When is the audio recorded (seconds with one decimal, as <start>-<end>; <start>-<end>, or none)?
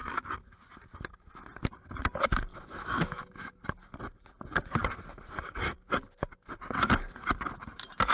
0.0-2.5; 3.6-8.1